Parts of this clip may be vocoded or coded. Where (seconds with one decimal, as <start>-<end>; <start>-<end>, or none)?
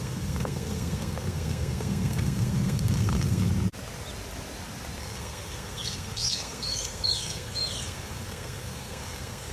0.0-3.5; 5.0-9.5